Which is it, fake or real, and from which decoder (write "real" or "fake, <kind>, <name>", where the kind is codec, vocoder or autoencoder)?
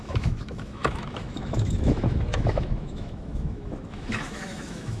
fake, autoencoder, DAC-VAE